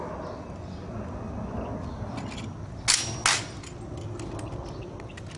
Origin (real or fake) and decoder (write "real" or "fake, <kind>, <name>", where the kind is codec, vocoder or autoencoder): real